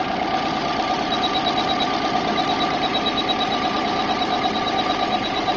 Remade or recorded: recorded